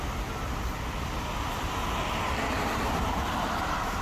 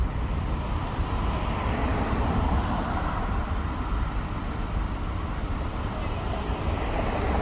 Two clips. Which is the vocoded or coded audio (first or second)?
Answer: second